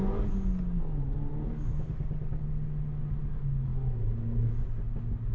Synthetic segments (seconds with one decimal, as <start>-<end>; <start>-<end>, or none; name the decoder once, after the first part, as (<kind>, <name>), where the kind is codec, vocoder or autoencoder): none